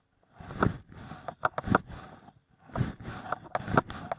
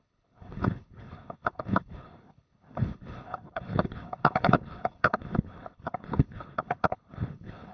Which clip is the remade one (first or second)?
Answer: second